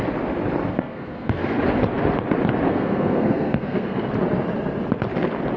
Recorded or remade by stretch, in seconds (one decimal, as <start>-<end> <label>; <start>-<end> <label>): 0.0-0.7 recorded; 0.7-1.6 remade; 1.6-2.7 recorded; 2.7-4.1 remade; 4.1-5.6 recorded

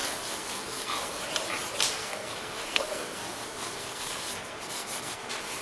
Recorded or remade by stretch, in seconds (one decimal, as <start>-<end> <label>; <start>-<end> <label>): 0.0-1.2 remade; 1.2-2.0 recorded; 2.0-5.6 remade

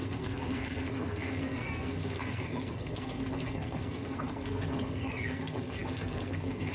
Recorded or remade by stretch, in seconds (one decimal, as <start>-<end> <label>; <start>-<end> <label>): 0.0-6.7 remade

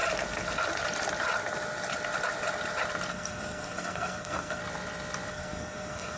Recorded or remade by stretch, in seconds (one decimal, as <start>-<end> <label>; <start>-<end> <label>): 0.0-3.1 recorded; 3.1-4.6 remade; 4.6-5.3 recorded; 5.3-6.2 remade